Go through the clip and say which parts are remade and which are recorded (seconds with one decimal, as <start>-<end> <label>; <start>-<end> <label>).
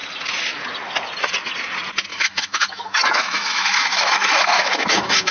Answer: 0.0-2.1 recorded; 2.1-5.3 remade